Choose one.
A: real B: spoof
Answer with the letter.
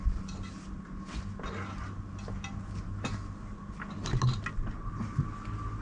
A